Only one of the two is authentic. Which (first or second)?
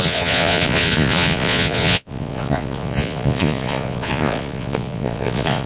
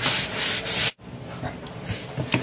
second